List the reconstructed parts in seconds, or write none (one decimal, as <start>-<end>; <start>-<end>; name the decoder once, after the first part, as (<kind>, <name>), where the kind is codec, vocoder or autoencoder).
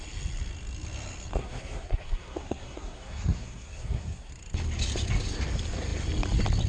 1.4-4.3 (codec, SNAC)